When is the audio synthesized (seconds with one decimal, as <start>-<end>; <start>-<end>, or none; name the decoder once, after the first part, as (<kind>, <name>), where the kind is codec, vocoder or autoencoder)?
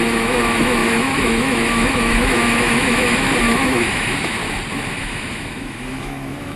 0.0-4.4 (autoencoder, DAC-VAE); 4.9-6.6